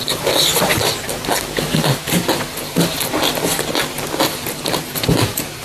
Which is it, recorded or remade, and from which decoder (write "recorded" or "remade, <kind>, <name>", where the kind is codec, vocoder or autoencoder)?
recorded